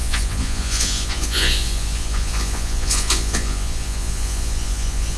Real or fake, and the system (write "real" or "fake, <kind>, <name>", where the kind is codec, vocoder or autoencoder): fake, vocoder, Vocos